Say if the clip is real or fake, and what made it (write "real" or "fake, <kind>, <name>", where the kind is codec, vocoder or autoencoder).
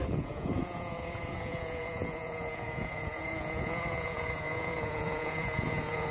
fake, vocoder, Vocos